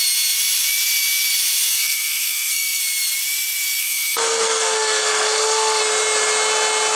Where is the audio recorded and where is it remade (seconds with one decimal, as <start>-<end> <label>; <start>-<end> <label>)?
0.0-1.7 recorded; 1.7-2.8 remade; 2.8-3.8 recorded; 3.8-5.8 remade; 5.8-7.0 recorded